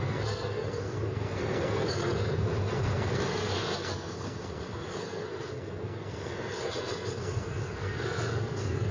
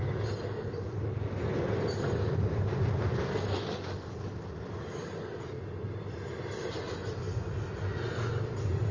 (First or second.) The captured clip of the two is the second